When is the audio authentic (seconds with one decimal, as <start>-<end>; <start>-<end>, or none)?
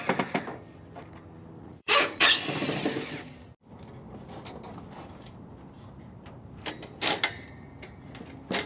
0.0-1.6; 2.3-8.7